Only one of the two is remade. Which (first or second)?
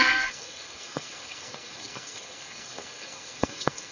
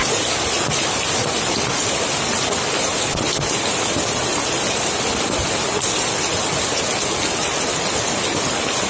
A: first